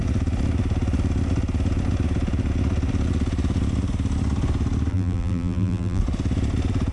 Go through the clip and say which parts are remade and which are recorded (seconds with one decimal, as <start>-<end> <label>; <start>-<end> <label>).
0.0-4.9 recorded; 4.9-6.0 remade; 6.0-6.9 recorded